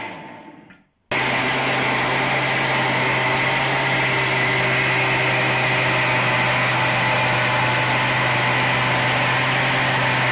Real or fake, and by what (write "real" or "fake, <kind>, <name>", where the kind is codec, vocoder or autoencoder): real